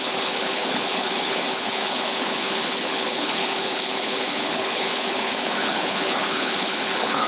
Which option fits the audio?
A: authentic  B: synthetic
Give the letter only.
B